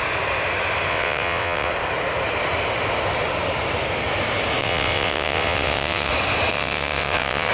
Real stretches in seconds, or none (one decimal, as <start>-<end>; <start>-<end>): 0.0-0.9; 1.7-4.6; 6.1-6.5